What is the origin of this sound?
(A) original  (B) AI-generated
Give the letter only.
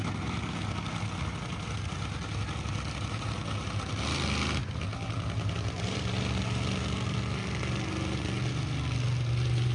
A